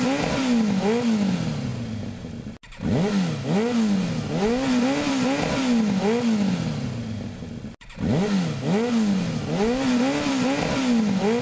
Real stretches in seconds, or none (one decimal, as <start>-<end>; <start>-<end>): 0.0-11.4